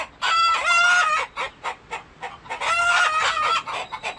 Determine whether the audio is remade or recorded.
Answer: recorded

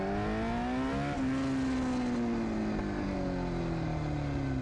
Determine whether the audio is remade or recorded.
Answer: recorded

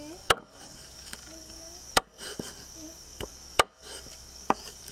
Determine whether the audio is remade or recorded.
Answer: remade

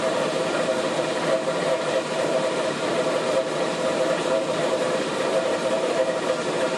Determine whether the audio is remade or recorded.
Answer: remade